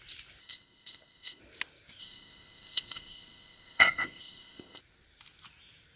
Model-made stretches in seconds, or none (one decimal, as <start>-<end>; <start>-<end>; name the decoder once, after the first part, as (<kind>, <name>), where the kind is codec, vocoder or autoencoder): 0.4-1.4 (codec, ZipCodec); 2.0-4.8